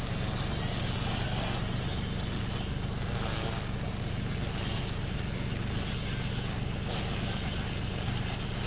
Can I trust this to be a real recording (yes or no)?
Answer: yes